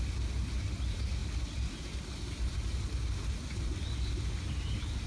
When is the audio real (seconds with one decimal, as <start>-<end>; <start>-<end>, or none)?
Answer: 0.0-5.1